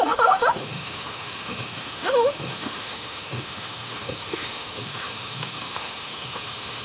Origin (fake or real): fake